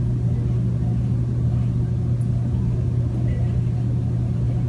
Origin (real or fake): real